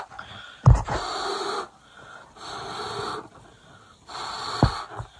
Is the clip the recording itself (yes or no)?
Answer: yes